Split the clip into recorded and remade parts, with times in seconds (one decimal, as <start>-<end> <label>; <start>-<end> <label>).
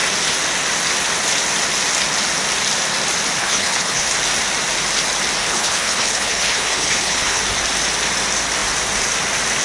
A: 0.0-3.4 recorded; 3.4-4.1 remade; 4.1-5.4 recorded; 5.4-7.4 remade; 7.4-9.6 recorded